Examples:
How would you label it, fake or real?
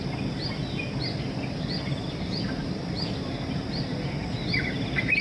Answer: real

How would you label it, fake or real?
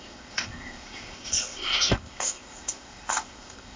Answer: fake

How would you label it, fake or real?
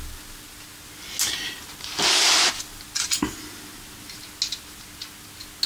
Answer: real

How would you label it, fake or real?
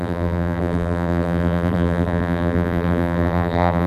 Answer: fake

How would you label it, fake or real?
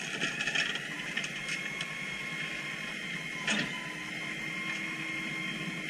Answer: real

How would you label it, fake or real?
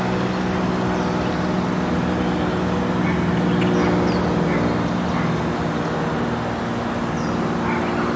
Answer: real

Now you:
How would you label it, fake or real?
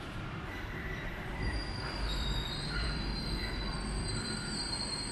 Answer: fake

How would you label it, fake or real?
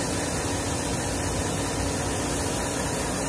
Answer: real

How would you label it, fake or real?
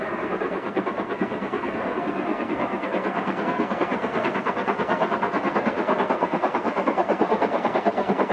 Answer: fake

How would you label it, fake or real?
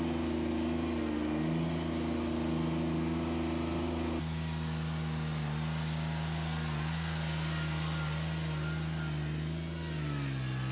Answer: real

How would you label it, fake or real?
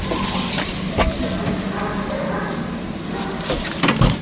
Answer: real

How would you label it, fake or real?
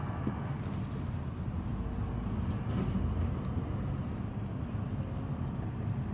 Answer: real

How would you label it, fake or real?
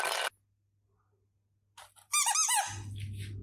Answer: real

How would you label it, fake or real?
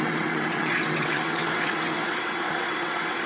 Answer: fake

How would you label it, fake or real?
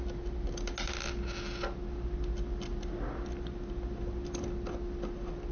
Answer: real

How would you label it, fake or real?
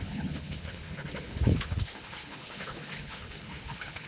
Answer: fake